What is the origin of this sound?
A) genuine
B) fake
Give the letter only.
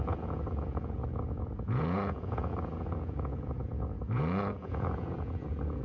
B